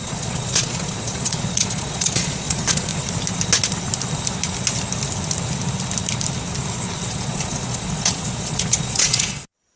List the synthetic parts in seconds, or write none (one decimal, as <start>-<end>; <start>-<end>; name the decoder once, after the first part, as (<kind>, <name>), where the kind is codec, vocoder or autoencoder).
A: 0.0-2.9 (vocoder, Vocos); 7.1-9.8